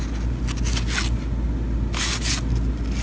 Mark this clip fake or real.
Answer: real